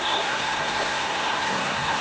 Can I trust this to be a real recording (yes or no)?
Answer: no